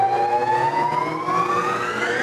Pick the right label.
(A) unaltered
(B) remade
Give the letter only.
A